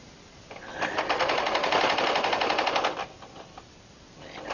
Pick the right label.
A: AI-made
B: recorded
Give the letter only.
B